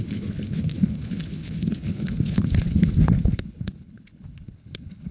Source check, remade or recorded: remade